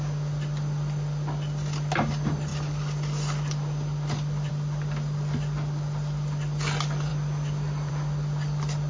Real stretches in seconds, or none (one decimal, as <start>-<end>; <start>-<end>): 0.0-8.9